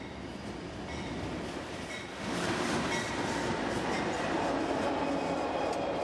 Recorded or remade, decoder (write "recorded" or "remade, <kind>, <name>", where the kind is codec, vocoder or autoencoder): recorded